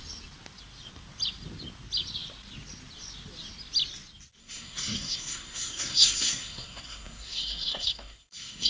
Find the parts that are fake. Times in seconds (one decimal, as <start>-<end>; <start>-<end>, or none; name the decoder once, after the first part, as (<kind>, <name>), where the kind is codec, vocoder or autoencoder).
4.4-8.7 (codec, SNAC)

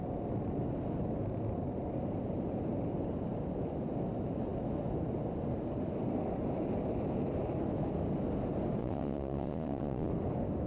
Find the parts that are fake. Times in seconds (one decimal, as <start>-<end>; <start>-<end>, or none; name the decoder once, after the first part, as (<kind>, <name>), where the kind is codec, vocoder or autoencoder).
8.8-10.1 (vocoder, Vocos)

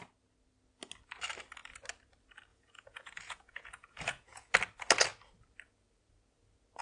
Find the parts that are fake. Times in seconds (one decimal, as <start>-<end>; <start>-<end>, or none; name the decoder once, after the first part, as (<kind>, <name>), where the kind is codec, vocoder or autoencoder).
2.5-4.5 (vocoder, Vocos)

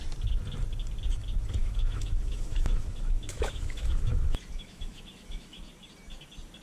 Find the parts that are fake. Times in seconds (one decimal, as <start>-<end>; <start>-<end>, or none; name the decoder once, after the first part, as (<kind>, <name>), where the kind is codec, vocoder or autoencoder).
1.6-5.6 (autoencoder, DAC-VAE)

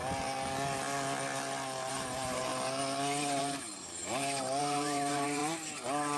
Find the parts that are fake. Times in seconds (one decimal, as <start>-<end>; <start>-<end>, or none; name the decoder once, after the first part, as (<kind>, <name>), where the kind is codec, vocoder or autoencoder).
1.9-2.5 (vocoder, BigVGAN v2); 3.4-4.0; 4.6-5.4

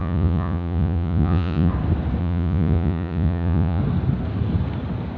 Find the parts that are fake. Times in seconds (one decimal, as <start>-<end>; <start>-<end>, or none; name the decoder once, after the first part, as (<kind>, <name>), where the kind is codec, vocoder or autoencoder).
0.0-1.7 (vocoder, Vocos); 2.2-3.8

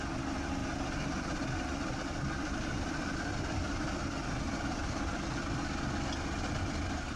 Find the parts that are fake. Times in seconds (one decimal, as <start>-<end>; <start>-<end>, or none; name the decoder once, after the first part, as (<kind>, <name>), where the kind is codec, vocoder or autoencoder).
0.6-4.9 (vocoder, BigVGAN v2)

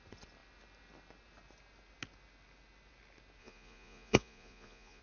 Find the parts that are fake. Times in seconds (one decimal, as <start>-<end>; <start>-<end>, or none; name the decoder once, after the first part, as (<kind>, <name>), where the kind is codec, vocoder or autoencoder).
3.4-5.0 (vocoder, Vocos)